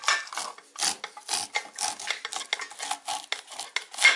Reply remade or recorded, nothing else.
recorded